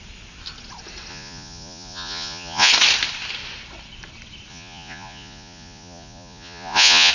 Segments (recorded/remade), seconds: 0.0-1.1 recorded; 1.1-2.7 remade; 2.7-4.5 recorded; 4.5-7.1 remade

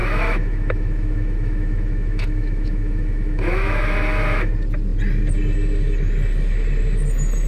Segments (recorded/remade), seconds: 0.0-4.5 remade; 4.5-7.5 recorded

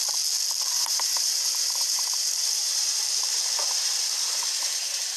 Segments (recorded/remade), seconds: 0.0-0.7 recorded; 0.7-5.2 remade

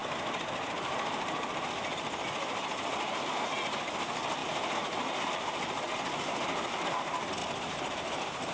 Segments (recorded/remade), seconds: 0.0-4.4 recorded; 4.4-5.3 remade; 5.3-7.4 recorded; 7.4-8.5 remade